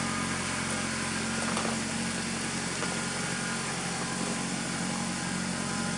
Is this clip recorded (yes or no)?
yes